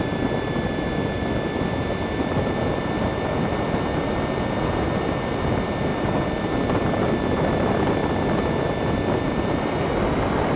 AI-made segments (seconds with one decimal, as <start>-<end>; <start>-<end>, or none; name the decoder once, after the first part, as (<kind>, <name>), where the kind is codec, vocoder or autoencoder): none

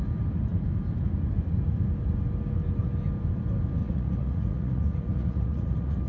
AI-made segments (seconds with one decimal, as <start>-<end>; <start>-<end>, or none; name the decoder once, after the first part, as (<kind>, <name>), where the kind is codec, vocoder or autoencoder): 3.8-6.1 (vocoder, Vocos)

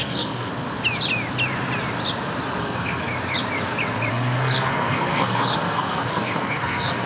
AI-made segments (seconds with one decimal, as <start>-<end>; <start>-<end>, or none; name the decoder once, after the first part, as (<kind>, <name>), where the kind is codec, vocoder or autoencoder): 0.0-0.5 (codec, SNAC); 2.6-3.1; 4.1-7.1

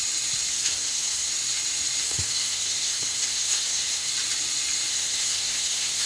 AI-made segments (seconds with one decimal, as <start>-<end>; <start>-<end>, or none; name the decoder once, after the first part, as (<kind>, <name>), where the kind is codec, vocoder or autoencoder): 0.5-1.3 (codec, SNAC); 2.0-4.1; 4.9-6.1

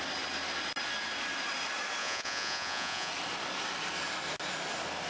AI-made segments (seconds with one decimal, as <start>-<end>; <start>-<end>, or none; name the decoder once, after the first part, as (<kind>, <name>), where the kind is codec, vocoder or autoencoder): 2.0-3.1 (vocoder, Vocos)

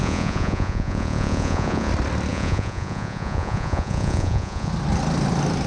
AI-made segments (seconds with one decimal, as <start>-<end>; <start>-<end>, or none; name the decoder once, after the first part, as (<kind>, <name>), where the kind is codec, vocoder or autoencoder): 0.0-1.9 (vocoder, Vocos); 2.3-4.7

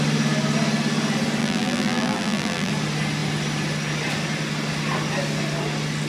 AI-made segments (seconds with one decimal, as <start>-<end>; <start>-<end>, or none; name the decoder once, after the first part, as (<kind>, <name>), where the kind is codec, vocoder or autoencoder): 1.4-2.7 (vocoder, BigVGAN v2)